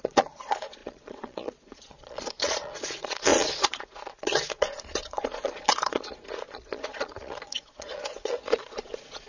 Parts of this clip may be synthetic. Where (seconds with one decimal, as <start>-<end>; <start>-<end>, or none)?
0.0-9.3